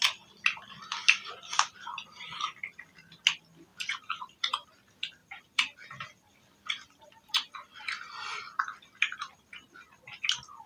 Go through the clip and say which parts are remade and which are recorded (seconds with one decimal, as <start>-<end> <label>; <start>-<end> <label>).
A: 0.0-3.7 recorded; 3.7-4.7 remade; 4.7-5.2 recorded; 5.2-7.5 remade; 7.5-10.7 recorded